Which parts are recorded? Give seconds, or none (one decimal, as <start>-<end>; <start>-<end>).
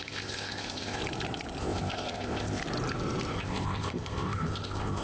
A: 1.0-1.6; 2.6-3.3